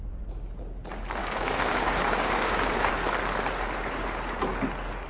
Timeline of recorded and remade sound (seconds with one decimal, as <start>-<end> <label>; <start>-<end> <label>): 0.0-1.2 recorded; 1.2-2.9 remade; 2.9-5.1 recorded